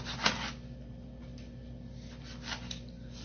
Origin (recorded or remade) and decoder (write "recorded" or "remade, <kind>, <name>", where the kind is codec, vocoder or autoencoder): recorded